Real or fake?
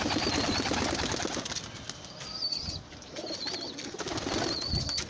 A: real